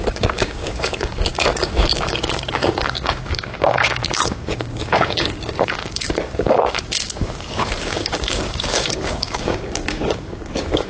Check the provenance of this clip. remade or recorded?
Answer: remade